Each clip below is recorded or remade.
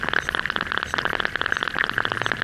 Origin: recorded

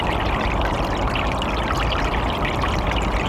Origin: recorded